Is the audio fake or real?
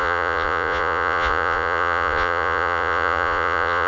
fake